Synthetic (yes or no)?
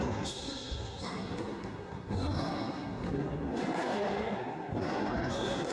yes